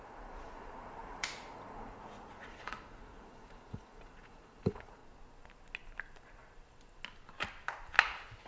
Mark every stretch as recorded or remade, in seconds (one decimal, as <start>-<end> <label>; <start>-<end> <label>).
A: 0.0-5.0 remade; 5.0-8.0 recorded; 8.0-8.5 remade